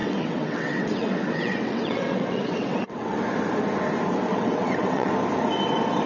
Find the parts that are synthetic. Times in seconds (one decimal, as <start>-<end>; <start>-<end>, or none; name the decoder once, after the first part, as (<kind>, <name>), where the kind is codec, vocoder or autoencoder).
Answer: 0.0-3.2 (vocoder, WaveNeXt); 4.3-5.1

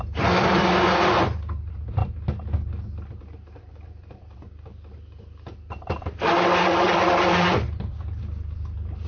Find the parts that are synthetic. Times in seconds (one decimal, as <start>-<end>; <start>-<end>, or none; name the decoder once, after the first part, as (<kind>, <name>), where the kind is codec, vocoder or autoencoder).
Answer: 0.0-2.0 (vocoder, BigVGAN v2); 3.2-9.1

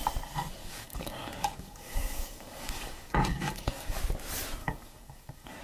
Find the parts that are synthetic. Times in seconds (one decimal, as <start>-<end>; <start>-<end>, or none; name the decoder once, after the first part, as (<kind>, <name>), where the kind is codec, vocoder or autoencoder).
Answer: 0.6-4.0 (codec, DAC); 4.6-5.6